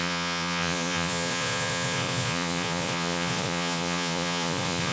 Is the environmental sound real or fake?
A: fake